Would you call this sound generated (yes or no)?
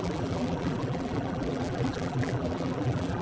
yes